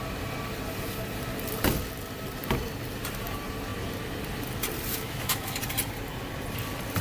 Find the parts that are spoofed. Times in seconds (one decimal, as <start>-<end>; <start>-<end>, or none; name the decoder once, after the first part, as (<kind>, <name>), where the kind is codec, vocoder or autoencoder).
4.9-5.5 (autoencoder, DAC-VAE)